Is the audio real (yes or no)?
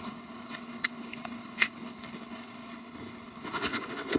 no